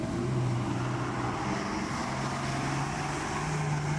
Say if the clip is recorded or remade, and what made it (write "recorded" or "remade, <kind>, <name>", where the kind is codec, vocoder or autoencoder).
recorded